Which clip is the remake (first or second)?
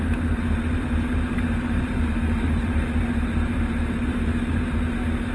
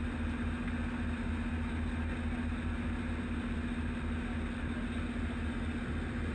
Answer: first